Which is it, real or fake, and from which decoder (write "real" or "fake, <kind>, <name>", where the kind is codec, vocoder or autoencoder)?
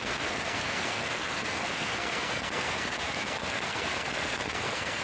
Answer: fake, codec, SNAC